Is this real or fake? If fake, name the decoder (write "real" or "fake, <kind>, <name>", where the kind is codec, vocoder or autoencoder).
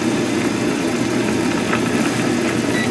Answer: real